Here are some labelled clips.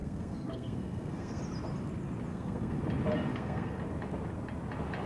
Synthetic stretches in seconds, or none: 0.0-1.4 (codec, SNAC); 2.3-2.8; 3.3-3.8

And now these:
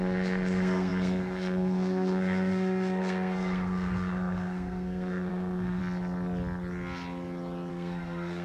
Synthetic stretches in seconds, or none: 0.0-5.8 (codec, SNAC); 7.7-8.4

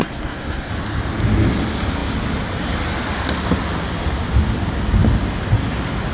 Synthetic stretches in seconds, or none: 0.0-0.7 (codec, SNAC)

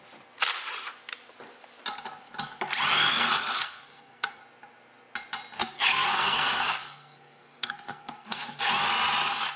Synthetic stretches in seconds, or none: 2.9-4.4 (codec, SNAC); 5.6-8.7

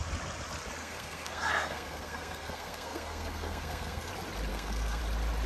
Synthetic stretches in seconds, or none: 0.8-4.1 (codec, SNAC); 4.5-5.0

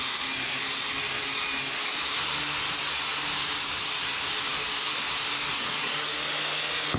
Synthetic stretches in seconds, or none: none

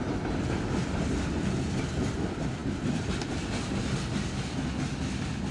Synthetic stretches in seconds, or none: none

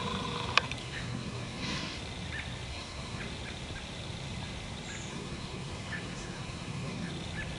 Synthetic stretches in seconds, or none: 0.8-2.0 (codec, SNAC); 2.7-3.2; 5.1-7.1